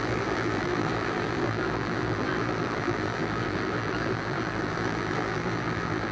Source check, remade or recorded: remade